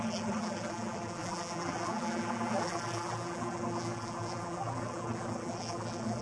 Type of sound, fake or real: fake